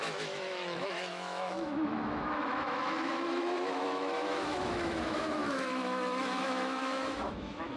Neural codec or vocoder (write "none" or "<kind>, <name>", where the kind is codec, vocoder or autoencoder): autoencoder, DAC-VAE